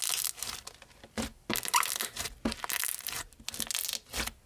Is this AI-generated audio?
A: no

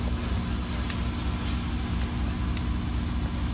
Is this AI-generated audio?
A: no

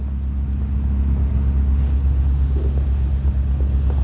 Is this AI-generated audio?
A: no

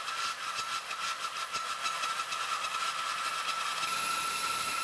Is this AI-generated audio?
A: no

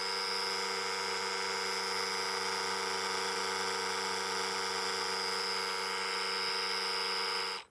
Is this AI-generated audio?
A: no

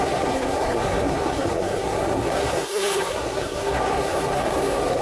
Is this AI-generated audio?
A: yes